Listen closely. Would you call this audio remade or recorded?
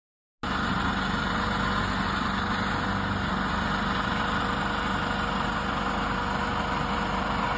recorded